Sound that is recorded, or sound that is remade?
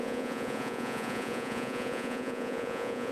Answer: remade